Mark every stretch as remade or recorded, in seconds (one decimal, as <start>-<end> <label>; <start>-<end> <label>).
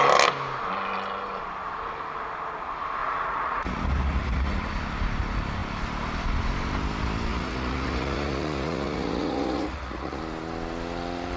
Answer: 0.0-3.0 recorded; 3.0-4.7 remade; 4.7-7.3 recorded; 7.3-10.2 remade; 10.2-11.4 recorded